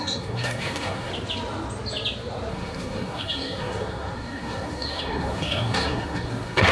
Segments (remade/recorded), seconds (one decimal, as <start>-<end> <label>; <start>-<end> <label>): 0.0-1.1 remade; 1.1-2.5 recorded; 2.5-6.7 remade